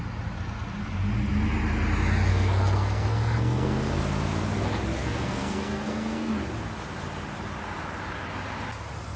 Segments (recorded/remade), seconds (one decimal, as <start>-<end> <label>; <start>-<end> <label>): 0.0-2.3 recorded; 2.3-4.0 remade; 4.0-5.0 recorded; 5.0-6.3 remade; 6.3-9.2 recorded